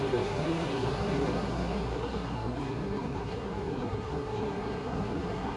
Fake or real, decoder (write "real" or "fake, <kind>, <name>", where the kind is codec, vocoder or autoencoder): fake, codec, SNAC